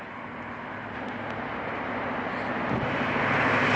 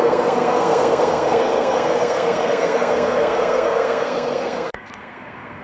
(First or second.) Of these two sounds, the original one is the first